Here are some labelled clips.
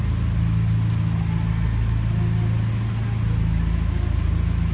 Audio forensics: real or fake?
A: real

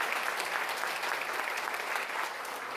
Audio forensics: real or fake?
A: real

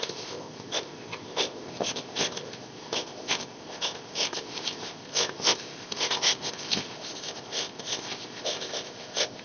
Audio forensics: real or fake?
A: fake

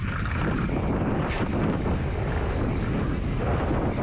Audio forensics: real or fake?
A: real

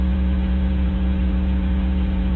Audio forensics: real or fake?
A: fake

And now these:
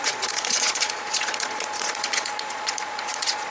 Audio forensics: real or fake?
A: fake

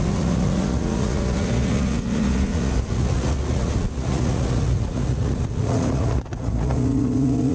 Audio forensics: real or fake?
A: fake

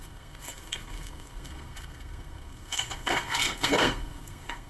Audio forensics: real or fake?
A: fake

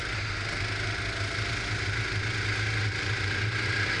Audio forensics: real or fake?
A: real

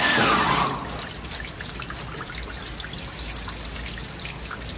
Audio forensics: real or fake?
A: real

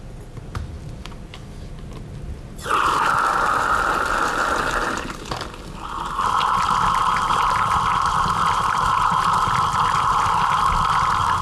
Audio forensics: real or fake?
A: real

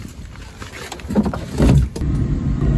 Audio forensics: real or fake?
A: real